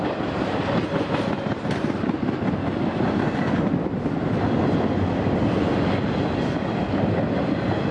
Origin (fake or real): real